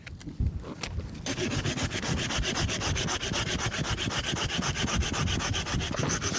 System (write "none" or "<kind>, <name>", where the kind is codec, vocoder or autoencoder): none